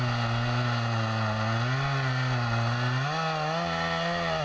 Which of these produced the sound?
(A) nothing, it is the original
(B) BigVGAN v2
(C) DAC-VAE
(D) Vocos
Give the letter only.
A